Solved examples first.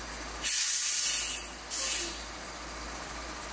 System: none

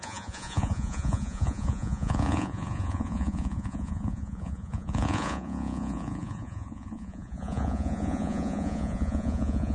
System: vocoder, Vocos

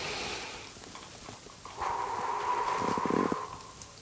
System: none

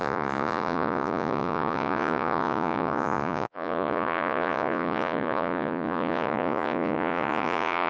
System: vocoder, Vocos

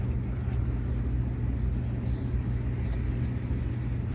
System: none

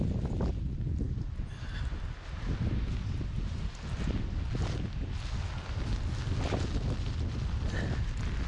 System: none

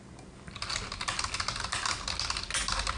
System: none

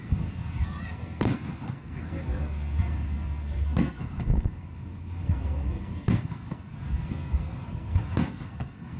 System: codec, SNAC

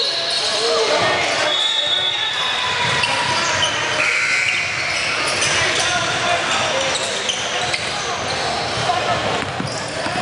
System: none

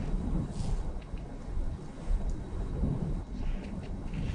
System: none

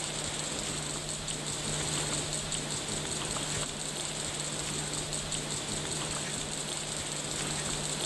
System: none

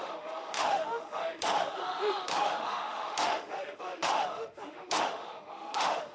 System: autoencoder, DAC-VAE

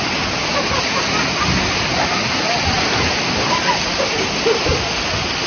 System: none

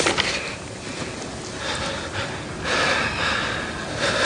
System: none